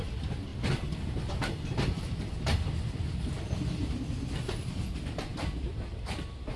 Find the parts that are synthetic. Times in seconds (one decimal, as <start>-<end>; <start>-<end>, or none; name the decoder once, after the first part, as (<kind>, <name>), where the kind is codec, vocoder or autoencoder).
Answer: none